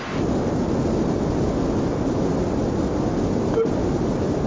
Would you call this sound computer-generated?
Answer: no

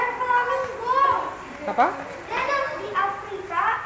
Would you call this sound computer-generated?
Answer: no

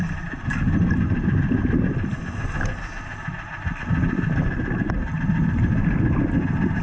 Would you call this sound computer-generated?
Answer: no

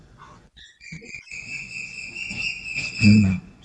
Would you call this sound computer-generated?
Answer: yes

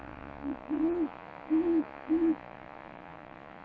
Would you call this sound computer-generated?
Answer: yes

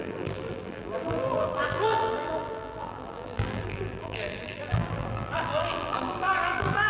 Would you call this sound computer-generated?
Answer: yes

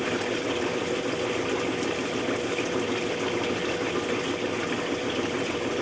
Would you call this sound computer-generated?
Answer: no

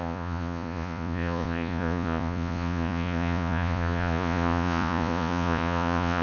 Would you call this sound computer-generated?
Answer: yes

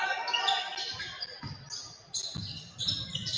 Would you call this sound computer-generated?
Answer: no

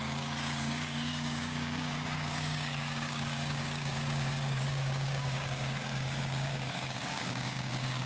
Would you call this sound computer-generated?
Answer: yes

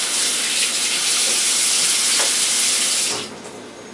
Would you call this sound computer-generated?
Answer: no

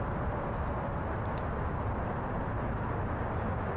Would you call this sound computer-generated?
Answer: no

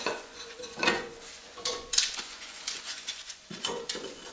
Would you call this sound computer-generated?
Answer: yes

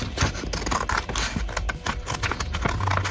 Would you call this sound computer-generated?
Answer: no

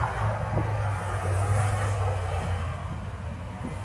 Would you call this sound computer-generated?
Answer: no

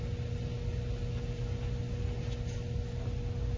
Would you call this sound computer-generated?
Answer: no